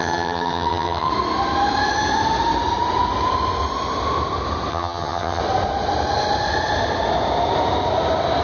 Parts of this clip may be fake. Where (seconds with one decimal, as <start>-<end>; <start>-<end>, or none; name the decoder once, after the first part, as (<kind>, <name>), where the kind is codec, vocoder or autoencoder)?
0.0-1.1 (vocoder, HiFi-GAN); 4.7-5.4